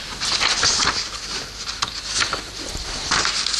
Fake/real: real